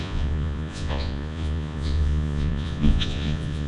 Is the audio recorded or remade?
remade